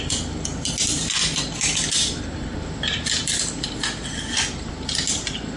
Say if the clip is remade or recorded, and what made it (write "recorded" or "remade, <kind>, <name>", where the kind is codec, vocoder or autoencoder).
recorded